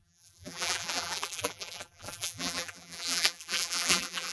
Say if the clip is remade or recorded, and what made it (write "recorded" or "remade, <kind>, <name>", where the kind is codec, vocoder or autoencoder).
remade, vocoder, BigVGAN v2